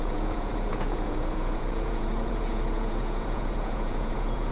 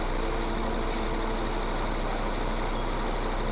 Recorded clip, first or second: second